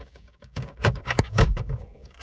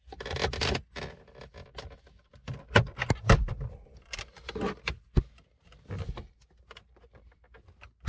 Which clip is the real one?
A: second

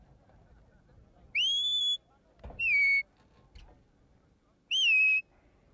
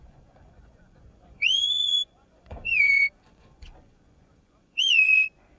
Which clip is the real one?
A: first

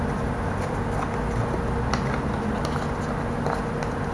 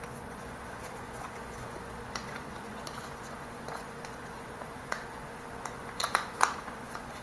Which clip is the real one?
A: first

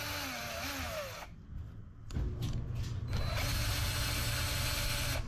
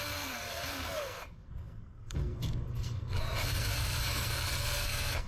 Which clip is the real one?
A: first